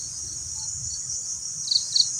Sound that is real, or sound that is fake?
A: real